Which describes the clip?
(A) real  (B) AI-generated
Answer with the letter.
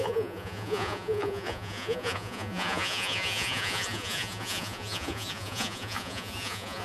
B